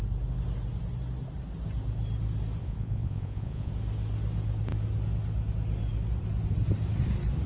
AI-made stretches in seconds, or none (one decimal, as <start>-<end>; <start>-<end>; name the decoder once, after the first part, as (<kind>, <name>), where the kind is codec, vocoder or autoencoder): 2.6-3.7 (vocoder, Vocos)